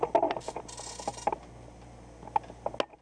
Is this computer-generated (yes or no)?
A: no